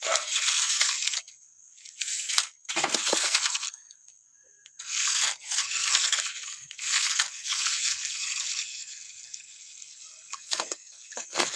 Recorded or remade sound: remade